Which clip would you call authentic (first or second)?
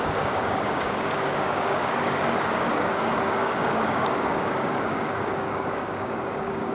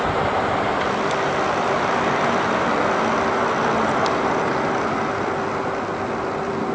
second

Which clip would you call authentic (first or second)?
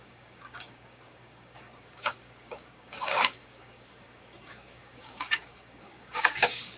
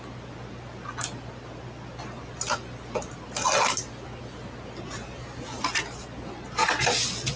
second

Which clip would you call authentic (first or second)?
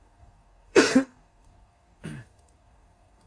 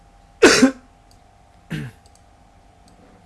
second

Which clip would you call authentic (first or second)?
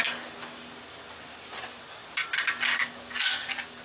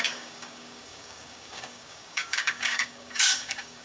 first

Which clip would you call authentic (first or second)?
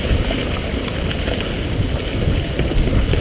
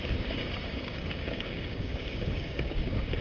first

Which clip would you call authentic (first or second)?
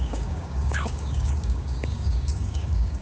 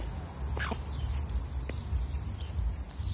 second